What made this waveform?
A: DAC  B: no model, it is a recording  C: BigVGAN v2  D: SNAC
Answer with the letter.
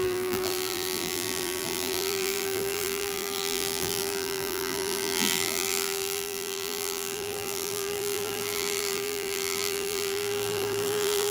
C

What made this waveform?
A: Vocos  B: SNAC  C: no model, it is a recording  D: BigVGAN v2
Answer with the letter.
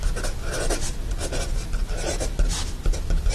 C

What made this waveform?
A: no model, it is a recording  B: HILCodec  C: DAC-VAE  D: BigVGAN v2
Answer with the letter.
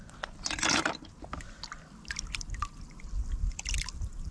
A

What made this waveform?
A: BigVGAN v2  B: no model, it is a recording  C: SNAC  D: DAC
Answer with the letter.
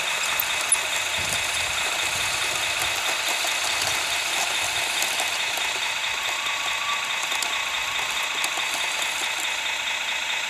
B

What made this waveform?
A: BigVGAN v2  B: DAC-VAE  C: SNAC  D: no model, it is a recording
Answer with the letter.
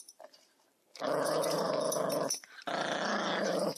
A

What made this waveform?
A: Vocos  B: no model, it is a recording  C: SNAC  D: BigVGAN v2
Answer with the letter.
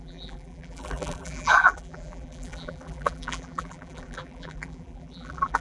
D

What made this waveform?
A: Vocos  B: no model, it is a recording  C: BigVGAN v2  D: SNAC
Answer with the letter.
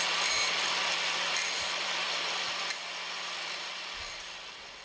C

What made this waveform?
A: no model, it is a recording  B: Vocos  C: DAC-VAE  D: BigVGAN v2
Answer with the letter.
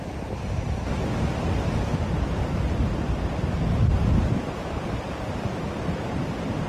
A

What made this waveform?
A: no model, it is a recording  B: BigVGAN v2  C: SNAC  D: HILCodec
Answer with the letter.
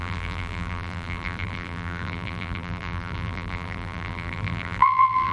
B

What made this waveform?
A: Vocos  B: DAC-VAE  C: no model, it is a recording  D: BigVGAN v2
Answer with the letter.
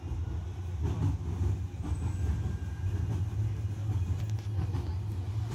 C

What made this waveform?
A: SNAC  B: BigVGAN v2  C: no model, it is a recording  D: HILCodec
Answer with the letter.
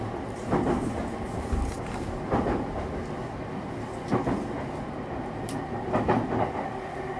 C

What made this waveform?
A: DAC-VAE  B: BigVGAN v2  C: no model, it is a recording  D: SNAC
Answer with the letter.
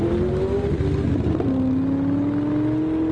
C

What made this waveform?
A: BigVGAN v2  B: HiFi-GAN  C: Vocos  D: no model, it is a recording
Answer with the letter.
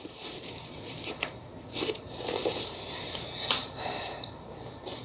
A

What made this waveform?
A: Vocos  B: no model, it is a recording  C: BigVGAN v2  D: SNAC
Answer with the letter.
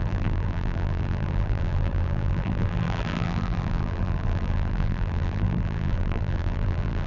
C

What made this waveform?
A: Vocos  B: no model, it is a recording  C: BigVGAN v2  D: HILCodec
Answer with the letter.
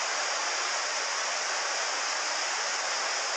B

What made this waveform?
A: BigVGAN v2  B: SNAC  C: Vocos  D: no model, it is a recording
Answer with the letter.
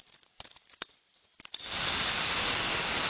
D